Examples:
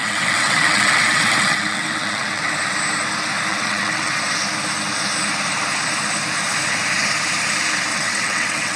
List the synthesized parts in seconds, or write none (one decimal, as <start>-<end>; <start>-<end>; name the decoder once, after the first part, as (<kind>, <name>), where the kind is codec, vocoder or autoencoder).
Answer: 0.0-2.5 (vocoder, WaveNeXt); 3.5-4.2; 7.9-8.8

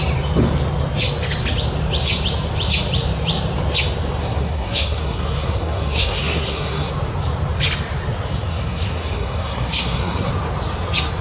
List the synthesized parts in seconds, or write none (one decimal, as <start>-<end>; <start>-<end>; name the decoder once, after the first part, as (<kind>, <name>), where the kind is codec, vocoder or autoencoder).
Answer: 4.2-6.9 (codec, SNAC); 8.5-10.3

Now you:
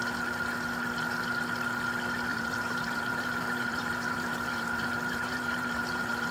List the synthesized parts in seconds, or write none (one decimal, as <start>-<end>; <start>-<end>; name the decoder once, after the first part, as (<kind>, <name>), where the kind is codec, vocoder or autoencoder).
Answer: 2.3-6.3 (vocoder, BigVGAN v2)

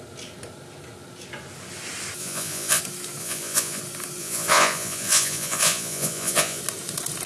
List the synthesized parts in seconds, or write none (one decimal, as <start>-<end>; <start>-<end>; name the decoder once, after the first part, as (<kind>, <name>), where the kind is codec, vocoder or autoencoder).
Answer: 2.2-2.8 (vocoder, Vocos); 3.2-3.8; 4.2-6.6

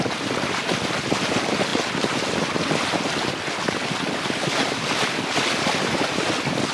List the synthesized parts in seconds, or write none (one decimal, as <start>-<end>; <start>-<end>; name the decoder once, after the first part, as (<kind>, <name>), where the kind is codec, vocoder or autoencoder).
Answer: none

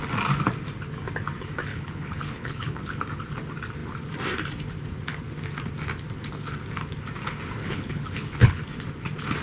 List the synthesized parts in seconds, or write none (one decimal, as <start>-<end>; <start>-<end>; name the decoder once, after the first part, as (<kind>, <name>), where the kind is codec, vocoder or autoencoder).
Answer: 1.7-3.0 (codec, HILCodec); 7.6-8.6

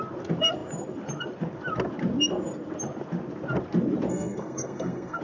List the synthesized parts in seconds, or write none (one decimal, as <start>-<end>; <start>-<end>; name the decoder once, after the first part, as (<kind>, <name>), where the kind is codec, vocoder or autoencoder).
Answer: 4.1-5.2 (codec, SNAC)